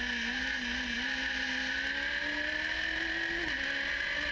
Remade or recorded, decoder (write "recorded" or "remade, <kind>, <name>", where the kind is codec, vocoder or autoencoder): recorded